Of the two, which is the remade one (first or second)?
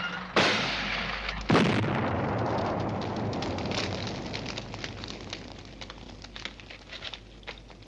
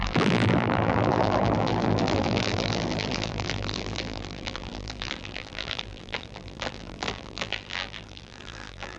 second